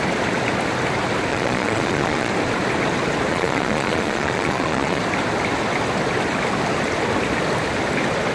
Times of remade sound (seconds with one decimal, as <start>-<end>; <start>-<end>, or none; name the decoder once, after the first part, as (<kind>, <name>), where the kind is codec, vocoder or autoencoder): 1.3-2.3 (vocoder, Vocos); 3.3-5.0